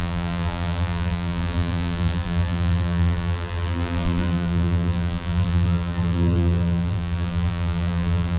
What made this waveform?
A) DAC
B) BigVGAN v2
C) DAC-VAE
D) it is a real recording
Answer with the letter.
B